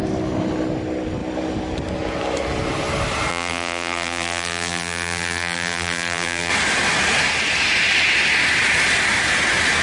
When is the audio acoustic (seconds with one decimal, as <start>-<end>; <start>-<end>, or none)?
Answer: 0.0-3.3; 6.5-9.8